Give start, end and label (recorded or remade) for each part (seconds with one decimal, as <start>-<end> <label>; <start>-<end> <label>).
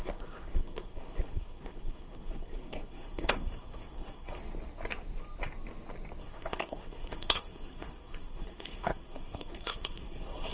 0.0-4.4 remade; 4.4-6.2 recorded; 6.2-10.5 remade